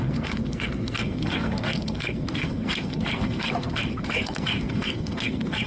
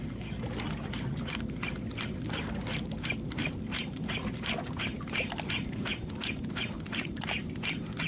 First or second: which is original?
second